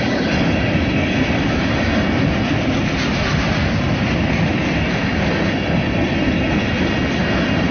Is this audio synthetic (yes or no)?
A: no